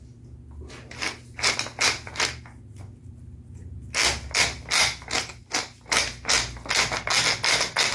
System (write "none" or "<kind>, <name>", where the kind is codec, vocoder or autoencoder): none